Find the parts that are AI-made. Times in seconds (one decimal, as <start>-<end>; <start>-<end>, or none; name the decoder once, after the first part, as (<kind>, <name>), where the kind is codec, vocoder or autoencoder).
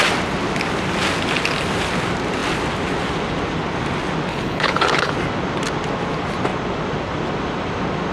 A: 4.3-5.1 (codec, HILCodec)